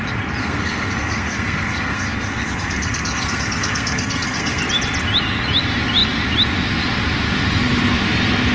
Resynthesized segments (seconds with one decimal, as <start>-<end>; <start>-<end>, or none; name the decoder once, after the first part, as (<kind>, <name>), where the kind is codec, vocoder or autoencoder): 0.4-4.6 (codec, SNAC)